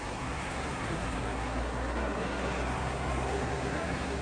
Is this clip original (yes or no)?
no